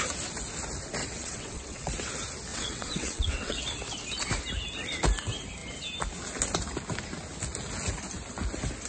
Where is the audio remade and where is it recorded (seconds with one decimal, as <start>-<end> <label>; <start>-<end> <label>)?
0.0-1.0 recorded; 1.0-1.9 remade; 1.9-2.5 recorded; 2.5-3.6 remade; 3.6-8.9 recorded